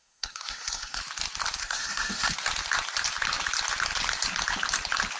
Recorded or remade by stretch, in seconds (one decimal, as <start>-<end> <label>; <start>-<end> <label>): 0.0-1.0 remade; 1.0-1.6 recorded; 1.6-2.3 remade; 2.3-5.2 recorded